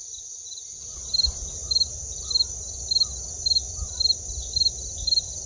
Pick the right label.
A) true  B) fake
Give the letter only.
A